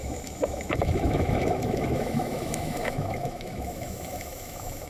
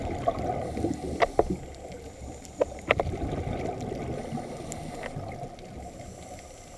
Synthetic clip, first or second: first